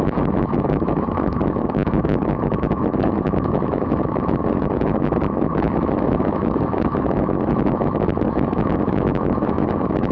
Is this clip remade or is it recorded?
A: remade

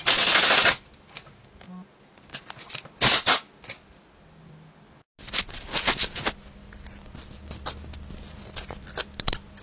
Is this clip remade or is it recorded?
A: recorded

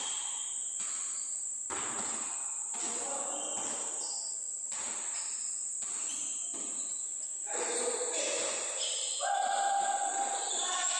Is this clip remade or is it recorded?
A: recorded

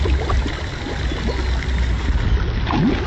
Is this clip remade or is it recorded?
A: recorded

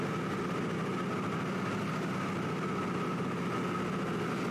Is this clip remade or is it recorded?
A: recorded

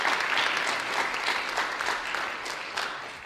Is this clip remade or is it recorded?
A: recorded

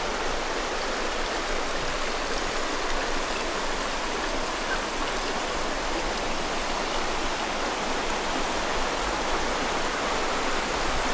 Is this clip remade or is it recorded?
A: recorded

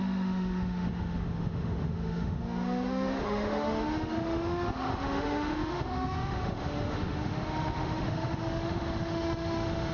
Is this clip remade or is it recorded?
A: remade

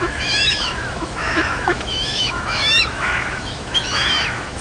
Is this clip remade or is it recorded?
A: remade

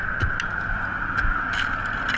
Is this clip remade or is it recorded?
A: recorded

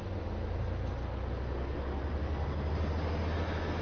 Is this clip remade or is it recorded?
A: recorded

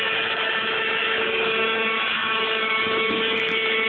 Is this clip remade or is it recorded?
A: remade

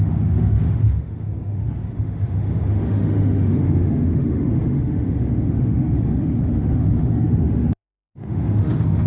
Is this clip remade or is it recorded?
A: remade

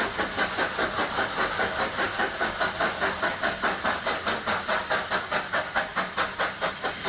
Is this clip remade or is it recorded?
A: recorded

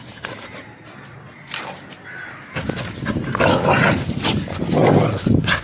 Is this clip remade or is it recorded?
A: recorded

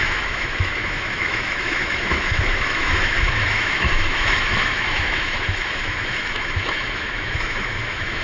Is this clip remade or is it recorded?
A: remade